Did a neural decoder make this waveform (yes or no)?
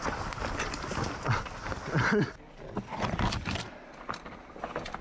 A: no